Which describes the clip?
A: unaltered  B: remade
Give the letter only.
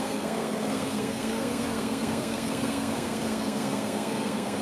B